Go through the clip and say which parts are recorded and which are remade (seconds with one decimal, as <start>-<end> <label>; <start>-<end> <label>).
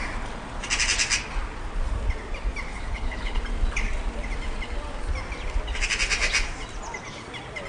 0.0-2.7 recorded; 2.7-3.4 remade; 3.4-7.7 recorded